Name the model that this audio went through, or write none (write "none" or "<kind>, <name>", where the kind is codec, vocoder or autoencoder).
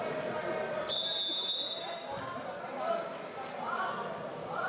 none